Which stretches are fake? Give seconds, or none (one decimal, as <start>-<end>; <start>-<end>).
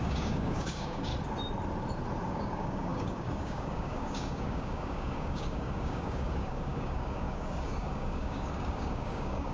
0.0-1.1; 2.3-9.5